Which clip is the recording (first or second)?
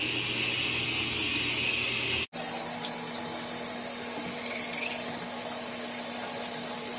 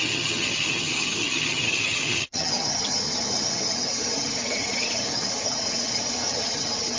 first